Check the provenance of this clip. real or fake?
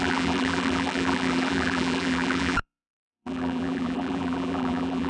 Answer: fake